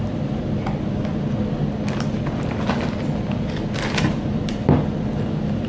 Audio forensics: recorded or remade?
recorded